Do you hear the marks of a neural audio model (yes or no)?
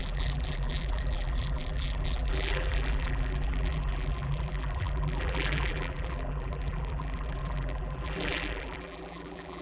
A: yes